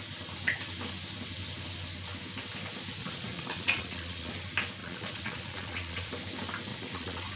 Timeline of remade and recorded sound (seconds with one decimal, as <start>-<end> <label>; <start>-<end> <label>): 0.0-3.0 recorded; 3.0-4.3 remade; 4.3-4.8 recorded; 4.8-6.1 remade; 6.1-6.7 recorded; 6.7-7.4 remade

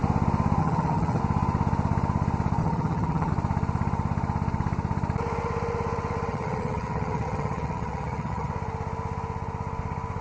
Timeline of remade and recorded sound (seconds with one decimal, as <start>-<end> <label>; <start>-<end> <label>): 0.0-0.6 recorded; 0.6-1.2 remade; 1.2-2.6 recorded; 2.6-3.3 remade; 3.3-6.3 recorded; 6.3-8.5 remade; 8.5-10.2 recorded